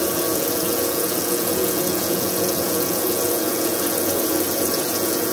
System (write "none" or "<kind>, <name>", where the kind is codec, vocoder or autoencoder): vocoder, Vocos